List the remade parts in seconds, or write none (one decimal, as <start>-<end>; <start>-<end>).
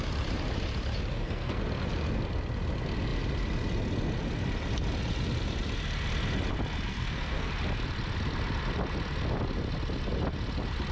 1.1-1.6; 6.9-7.5